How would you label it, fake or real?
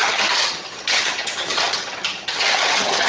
fake